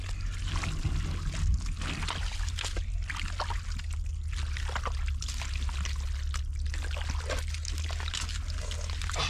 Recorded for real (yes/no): yes